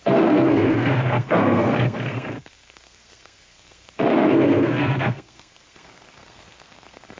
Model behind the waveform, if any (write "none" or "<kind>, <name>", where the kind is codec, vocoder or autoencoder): codec, SNAC